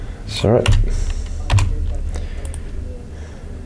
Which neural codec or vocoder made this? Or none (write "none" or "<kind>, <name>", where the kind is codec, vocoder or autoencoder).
none